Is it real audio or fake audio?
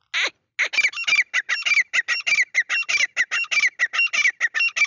real